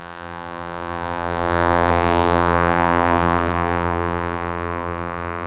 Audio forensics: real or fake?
fake